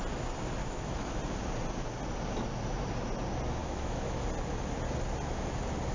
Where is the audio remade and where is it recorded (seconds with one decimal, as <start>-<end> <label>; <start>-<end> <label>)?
0.0-0.6 recorded; 0.6-1.2 remade; 1.2-3.6 recorded; 3.6-4.2 remade; 4.2-5.9 recorded